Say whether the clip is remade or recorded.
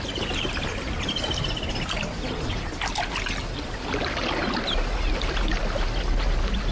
recorded